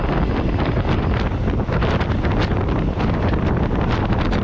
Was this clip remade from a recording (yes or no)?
no